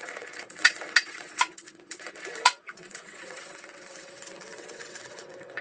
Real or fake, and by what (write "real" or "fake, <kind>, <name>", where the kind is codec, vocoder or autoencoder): fake, vocoder, WaveNeXt